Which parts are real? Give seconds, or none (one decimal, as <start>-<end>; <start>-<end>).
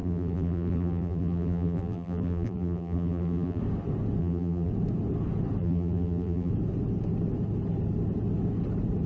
3.6-4.2; 4.7-5.6; 6.5-9.1